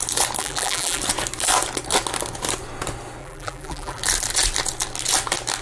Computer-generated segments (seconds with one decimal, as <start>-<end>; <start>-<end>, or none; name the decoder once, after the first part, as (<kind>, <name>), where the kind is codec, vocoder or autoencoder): 0.4-1.0 (vocoder, BigVGAN v2); 3.2-4.0